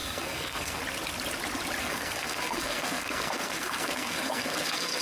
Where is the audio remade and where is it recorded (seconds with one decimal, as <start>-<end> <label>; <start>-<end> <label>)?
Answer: 0.0-0.8 remade; 0.8-1.8 recorded; 1.8-5.0 remade